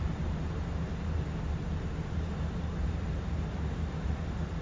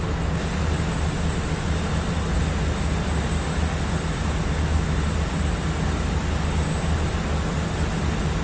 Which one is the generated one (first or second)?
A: first